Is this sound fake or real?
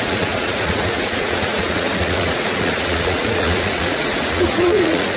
fake